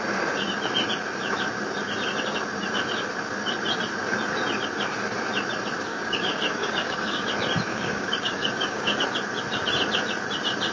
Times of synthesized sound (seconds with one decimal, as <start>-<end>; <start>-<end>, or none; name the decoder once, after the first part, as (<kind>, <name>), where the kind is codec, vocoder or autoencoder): 5.9-7.3 (codec, DAC); 7.7-9.0